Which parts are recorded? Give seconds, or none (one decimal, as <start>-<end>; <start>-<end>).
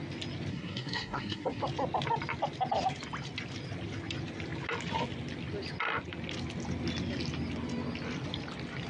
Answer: 0.0-0.5; 1.6-8.9